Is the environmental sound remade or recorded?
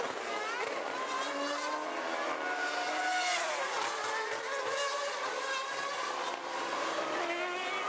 recorded